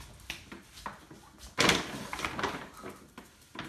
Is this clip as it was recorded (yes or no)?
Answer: yes